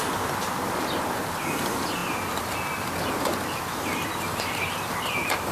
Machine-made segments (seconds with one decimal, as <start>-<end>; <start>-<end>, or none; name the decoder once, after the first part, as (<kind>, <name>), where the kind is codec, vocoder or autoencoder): none